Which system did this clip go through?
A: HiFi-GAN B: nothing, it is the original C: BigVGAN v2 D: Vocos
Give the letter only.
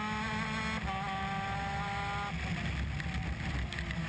B